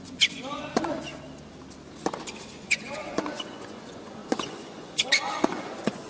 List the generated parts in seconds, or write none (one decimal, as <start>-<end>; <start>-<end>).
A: 0.0-1.1; 2.6-6.1